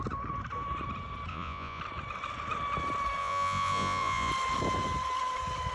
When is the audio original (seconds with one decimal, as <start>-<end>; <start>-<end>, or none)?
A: 0.0-1.3; 1.8-3.2; 4.3-5.7